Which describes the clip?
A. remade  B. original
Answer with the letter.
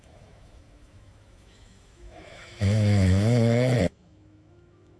A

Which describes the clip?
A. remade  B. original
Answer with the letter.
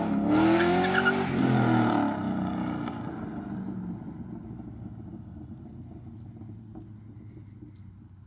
B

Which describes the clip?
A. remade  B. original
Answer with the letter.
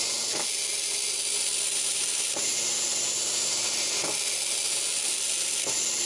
B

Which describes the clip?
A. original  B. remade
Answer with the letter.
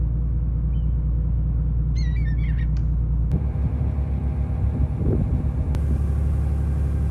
A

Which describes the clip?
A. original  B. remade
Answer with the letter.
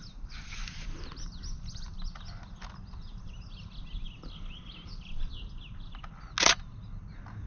A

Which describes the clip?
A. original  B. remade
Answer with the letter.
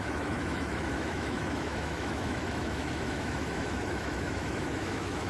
B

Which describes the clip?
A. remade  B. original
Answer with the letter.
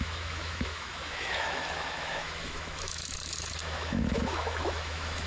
A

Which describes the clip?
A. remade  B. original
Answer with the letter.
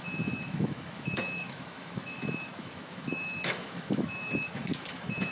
A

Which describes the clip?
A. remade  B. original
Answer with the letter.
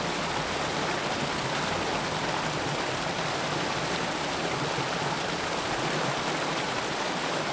B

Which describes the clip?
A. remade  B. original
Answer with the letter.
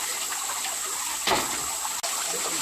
B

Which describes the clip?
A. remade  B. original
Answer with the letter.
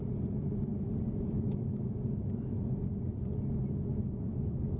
B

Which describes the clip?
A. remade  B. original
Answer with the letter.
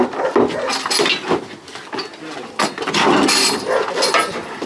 B